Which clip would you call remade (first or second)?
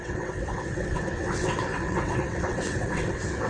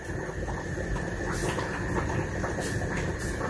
first